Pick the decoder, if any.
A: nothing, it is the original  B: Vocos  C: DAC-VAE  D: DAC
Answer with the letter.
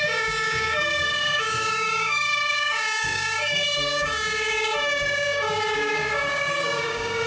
D